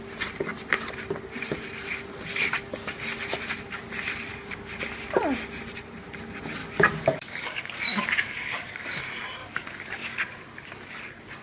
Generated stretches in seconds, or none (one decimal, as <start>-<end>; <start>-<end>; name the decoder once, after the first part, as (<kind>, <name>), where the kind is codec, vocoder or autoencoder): 4.3-4.8 (codec, DAC); 6.6-9.0; 9.4-10.2